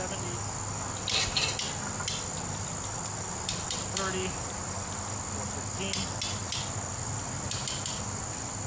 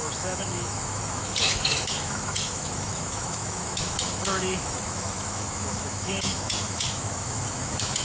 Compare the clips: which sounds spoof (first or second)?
second